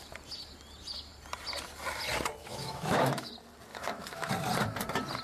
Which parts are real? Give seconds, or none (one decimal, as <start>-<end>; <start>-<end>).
0.0-2.4; 3.3-3.7; 4.3-5.2